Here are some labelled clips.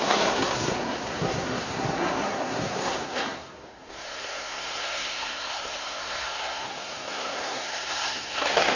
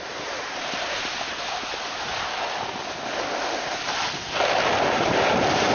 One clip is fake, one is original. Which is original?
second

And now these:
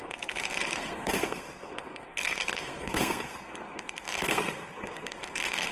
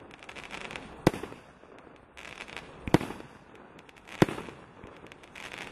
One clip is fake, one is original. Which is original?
second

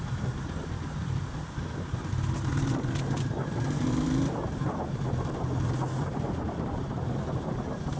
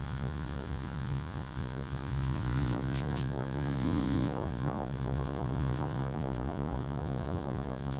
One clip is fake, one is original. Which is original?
first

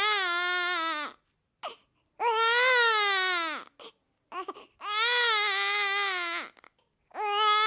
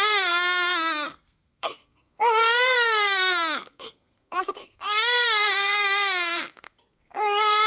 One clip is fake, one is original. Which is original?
first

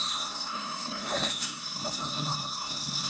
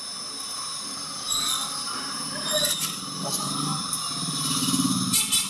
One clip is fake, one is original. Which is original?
second